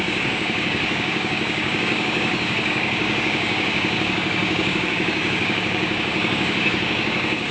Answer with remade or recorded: remade